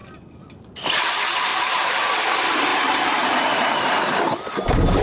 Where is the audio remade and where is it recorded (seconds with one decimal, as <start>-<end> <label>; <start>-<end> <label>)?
0.0-1.5 recorded; 1.5-2.1 remade; 2.1-2.7 recorded; 2.7-4.2 remade; 4.2-5.0 recorded